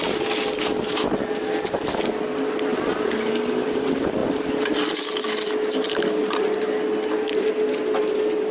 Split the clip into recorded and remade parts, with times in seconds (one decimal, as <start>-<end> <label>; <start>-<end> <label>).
0.0-8.5 recorded

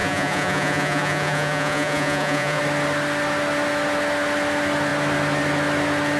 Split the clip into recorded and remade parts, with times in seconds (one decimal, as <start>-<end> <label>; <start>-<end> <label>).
0.0-2.6 remade; 2.6-6.2 recorded